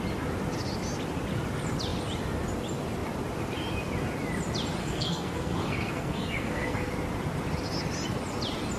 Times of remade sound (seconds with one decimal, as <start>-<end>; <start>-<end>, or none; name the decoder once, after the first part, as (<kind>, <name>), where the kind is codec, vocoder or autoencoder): 4.8-6.9 (codec, SNAC)